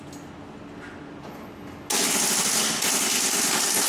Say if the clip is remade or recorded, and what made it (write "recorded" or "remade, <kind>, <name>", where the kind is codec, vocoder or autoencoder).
recorded